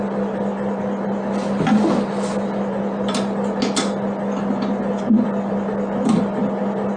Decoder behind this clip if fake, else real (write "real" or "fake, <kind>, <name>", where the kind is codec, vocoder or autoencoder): real